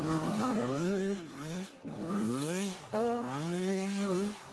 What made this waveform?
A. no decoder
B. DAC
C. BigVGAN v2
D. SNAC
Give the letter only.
D